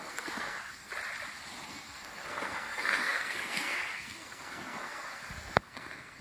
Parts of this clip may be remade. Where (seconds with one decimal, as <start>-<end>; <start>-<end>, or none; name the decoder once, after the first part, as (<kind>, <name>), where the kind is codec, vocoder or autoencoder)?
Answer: 0.0-0.9 (codec, SNAC); 1.7-6.2